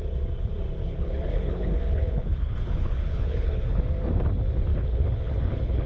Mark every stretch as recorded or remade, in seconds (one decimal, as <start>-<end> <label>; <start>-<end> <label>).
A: 0.0-0.8 recorded; 0.8-3.8 remade; 3.8-4.7 recorded; 4.7-5.9 remade